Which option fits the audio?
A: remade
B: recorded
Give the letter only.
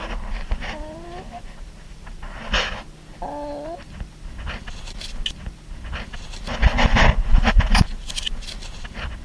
B